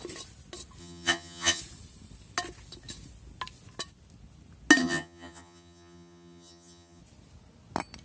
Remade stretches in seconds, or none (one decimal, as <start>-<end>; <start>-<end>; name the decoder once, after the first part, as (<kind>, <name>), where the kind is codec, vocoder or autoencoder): 0.8-1.6 (vocoder, HiFi-GAN); 4.8-7.0